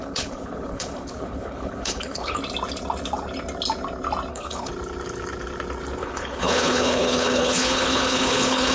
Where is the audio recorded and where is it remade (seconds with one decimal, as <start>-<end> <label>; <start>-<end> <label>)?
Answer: 0.0-2.4 remade; 2.4-4.3 recorded; 4.3-4.7 remade; 4.7-6.0 recorded; 6.0-8.7 remade